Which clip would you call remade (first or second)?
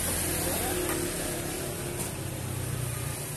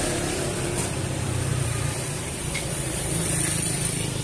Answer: second